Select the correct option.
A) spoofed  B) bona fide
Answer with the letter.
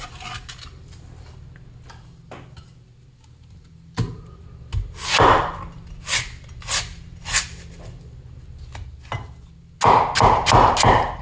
B